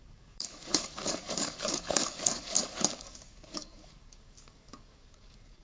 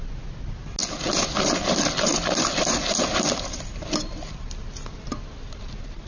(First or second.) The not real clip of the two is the first